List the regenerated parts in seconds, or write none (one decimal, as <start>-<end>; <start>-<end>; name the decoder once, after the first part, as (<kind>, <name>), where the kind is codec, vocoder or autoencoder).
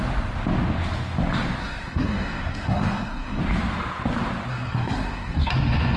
1.6-3.4 (codec, SNAC); 4.5-5.4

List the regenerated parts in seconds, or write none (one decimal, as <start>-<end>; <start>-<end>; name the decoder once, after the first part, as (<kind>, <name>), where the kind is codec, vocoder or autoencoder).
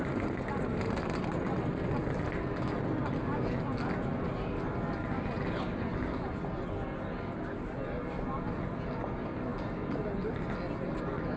none